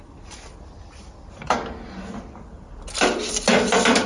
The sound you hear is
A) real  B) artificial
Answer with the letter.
A